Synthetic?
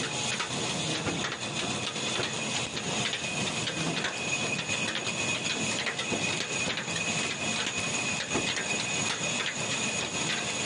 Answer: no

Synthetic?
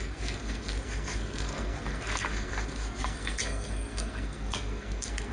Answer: yes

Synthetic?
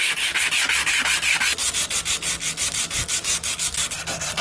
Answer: no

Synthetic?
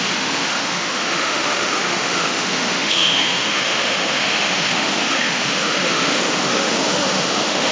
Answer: yes